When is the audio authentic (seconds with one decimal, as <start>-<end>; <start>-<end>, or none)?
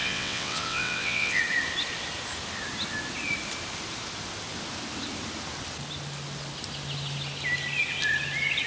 1.4-8.7